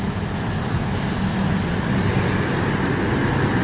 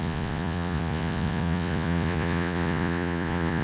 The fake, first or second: second